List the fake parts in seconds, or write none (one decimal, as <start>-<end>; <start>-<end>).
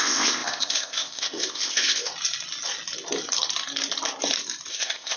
0.0-2.1; 4.7-5.2